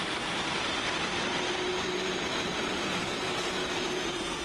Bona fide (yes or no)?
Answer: no